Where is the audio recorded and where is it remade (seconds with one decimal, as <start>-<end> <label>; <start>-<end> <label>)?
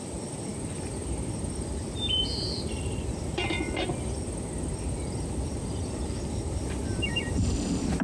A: 0.0-6.9 recorded; 6.9-8.0 remade